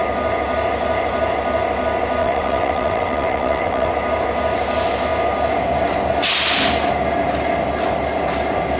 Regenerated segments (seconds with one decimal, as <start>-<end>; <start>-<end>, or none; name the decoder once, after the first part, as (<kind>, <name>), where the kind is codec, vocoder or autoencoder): 2.2-3.9 (vocoder, WaveNeXt)